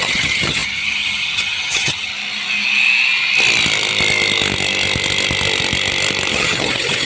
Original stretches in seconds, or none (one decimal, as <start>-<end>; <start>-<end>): 2.1-6.3